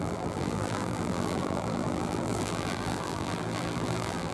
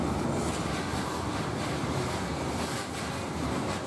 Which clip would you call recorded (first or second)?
second